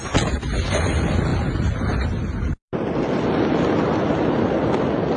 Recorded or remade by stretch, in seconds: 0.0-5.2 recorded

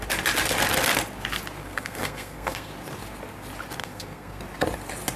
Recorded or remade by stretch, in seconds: 0.0-1.6 recorded; 1.6-2.7 remade; 2.7-3.8 recorded; 3.8-4.4 remade; 4.4-5.2 recorded

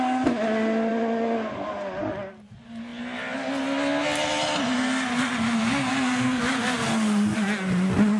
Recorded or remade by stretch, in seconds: 0.0-5.9 recorded; 5.9-6.4 remade; 6.4-8.2 recorded